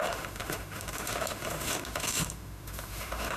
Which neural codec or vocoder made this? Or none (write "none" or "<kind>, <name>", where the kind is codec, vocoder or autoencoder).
autoencoder, DAC-VAE